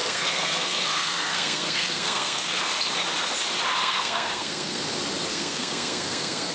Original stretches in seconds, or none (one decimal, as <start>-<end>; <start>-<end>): 2.6-3.8; 4.8-5.3